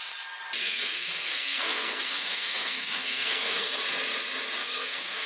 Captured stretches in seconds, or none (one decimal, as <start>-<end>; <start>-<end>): 0.0-0.6; 3.8-4.6